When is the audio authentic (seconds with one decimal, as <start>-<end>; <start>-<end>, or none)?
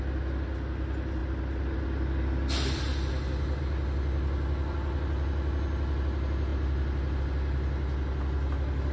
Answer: 0.0-8.9